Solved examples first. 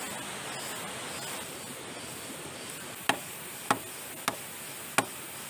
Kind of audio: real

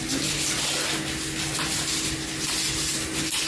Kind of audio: real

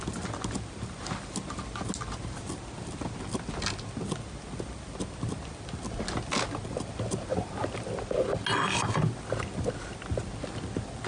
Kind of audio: real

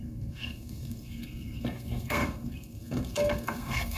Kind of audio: fake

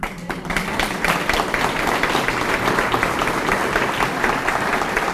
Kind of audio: real